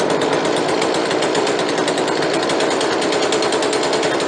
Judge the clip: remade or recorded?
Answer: recorded